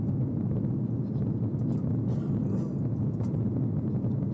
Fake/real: real